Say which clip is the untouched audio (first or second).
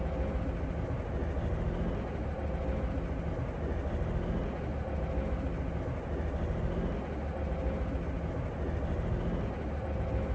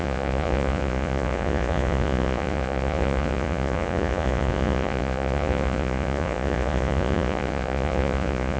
first